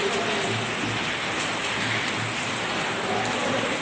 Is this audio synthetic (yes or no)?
no